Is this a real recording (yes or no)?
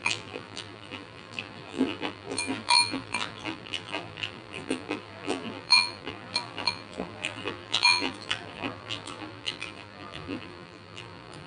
no